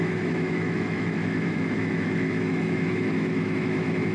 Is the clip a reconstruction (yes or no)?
yes